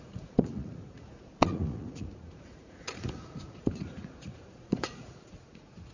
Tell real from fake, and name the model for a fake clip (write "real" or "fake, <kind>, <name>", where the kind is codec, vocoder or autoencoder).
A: fake, vocoder, Vocos